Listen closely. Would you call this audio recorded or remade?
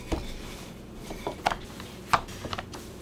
remade